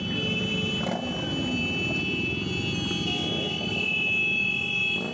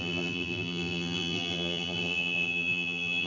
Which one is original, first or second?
first